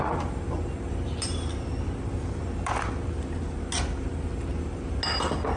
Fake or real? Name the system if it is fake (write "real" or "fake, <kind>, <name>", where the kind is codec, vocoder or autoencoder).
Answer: real